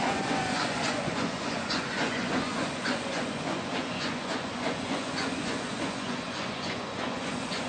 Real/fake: fake